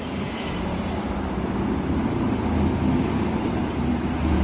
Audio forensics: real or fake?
real